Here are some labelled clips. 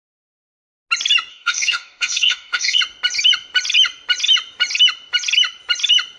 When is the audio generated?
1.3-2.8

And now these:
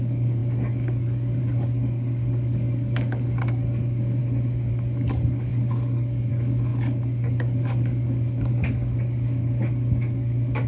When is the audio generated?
0.0-4.2; 4.7-10.7

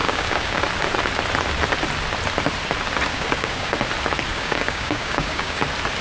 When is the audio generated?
0.0-0.6; 3.1-3.7; 4.3-5.6

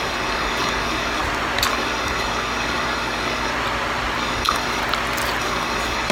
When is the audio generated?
0.0-1.2; 1.7-3.5; 4.2-4.8; 5.4-6.1

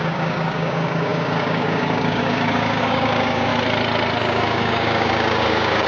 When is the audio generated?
0.0-3.5; 4.2-5.9

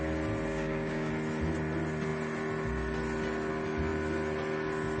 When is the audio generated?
0.5-1.1